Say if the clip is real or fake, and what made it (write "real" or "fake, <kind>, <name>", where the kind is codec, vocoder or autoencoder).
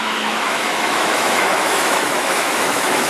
fake, autoencoder, DAC-VAE